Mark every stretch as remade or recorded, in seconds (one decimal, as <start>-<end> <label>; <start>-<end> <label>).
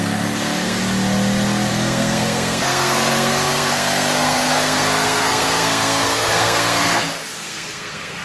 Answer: 0.0-0.8 remade; 0.8-1.7 recorded; 1.7-8.2 remade